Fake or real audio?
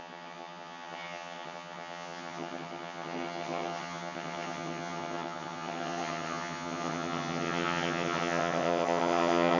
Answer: fake